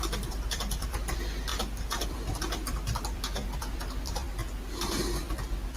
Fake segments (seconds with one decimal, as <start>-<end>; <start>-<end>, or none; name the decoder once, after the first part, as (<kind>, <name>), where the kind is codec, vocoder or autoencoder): 0.0-1.5 (vocoder, BigVGAN v2); 2.1-4.4